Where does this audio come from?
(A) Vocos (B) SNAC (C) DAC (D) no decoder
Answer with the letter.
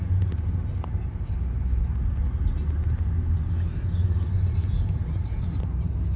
D